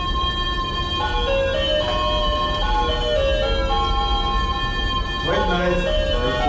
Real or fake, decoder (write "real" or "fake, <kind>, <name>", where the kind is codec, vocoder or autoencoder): real